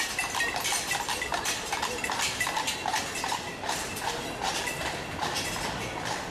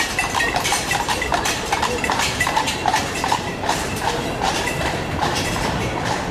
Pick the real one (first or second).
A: first